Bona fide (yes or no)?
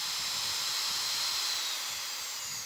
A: yes